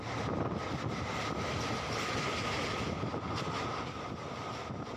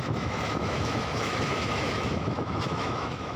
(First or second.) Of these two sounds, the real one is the first